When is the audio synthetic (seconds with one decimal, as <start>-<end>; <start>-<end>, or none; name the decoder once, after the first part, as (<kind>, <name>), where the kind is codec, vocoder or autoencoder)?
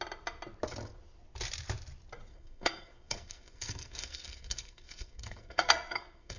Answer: 2.3-6.4 (codec, SNAC)